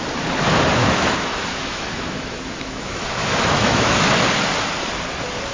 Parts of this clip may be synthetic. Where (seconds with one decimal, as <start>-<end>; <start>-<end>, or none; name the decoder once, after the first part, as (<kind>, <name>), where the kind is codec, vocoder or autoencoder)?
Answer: 0.8-4.1 (autoencoder, DAC-VAE)